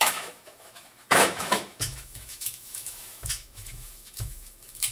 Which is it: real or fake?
fake